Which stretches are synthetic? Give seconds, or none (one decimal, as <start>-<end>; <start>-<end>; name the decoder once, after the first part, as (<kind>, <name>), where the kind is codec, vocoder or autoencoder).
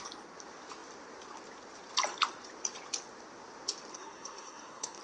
3.9-5.0 (codec, SNAC)